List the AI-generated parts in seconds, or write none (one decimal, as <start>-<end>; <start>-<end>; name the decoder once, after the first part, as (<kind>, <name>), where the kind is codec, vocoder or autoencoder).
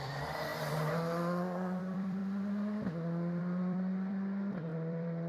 0.0-2.2 (vocoder, BigVGAN v2); 3.4-5.3